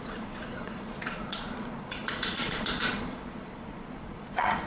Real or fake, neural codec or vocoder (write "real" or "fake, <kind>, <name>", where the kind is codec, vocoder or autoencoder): fake, vocoder, Vocos